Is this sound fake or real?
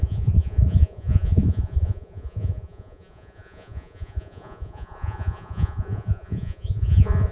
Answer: fake